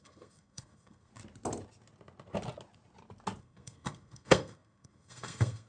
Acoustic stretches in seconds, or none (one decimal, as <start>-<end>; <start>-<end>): 1.1-3.4